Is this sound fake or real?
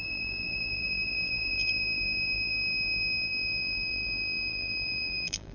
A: fake